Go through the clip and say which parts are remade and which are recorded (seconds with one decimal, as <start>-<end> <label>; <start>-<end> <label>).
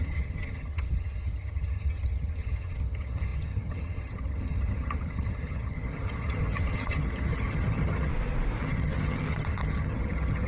0.0-8.1 remade; 8.1-8.6 recorded; 8.6-10.5 remade